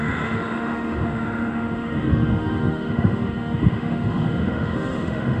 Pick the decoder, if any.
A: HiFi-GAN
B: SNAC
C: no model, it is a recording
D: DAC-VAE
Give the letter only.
D